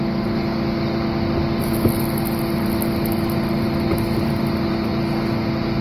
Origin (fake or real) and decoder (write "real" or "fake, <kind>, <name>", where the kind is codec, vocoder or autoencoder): real